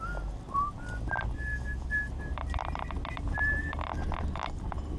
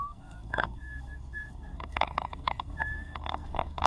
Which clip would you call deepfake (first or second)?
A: second